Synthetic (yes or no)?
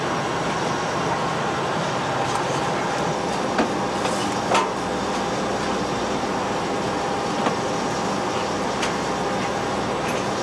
no